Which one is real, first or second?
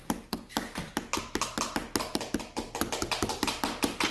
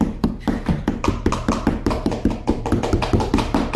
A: first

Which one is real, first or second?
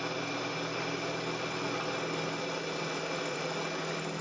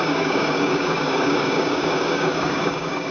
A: first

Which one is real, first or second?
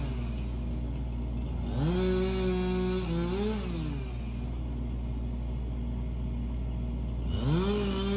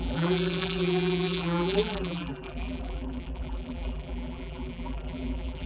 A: first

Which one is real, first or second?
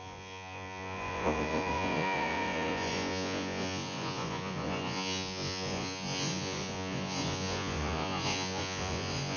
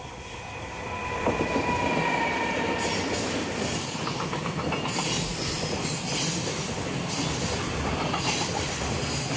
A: second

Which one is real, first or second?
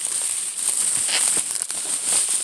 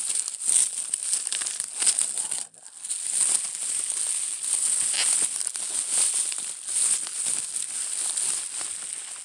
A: second